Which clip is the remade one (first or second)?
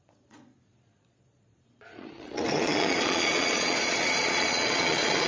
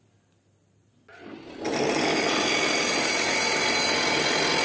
first